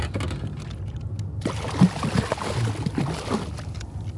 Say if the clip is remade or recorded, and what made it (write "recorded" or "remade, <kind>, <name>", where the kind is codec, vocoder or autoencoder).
recorded